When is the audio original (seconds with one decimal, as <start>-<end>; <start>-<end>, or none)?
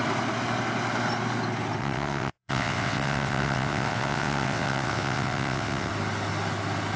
0.0-1.8; 5.9-7.0